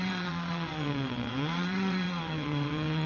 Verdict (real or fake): fake